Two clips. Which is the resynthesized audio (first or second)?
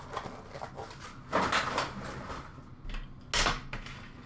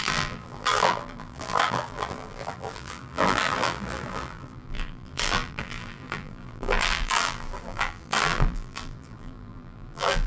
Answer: second